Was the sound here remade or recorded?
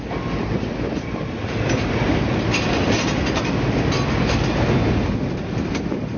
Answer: recorded